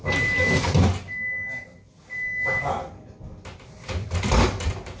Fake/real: real